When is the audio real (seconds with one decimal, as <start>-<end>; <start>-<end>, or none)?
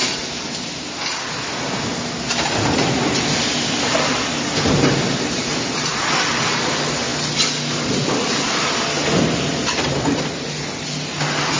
0.0-11.6